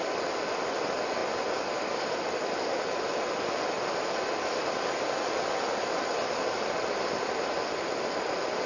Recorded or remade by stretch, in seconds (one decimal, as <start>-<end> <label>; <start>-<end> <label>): 0.0-8.7 recorded